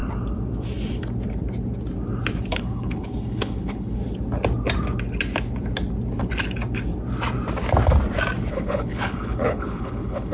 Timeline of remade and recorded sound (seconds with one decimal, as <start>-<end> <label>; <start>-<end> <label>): 0.0-2.5 recorded; 2.5-4.0 remade; 4.0-8.5 recorded; 8.5-10.3 remade

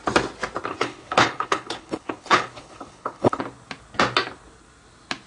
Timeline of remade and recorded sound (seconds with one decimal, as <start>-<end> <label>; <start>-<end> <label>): 0.0-0.7 recorded; 0.7-3.4 remade; 3.4-5.3 recorded

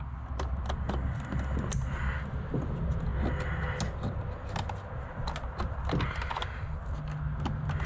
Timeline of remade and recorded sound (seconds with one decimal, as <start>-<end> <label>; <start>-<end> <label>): 0.0-7.9 recorded

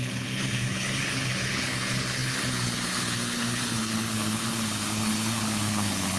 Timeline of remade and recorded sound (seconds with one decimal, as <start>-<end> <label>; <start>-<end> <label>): 0.0-6.2 remade

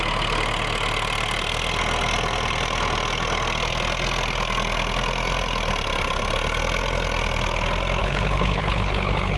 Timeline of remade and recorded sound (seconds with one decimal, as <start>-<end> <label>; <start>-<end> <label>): 0.0-8.0 recorded; 8.0-9.4 remade

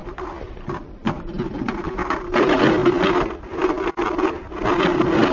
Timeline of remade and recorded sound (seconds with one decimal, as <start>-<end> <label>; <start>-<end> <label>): 0.0-5.3 recorded